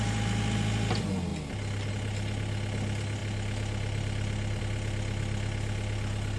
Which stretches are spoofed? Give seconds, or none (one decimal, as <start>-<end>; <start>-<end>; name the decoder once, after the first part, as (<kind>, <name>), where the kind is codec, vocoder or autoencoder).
none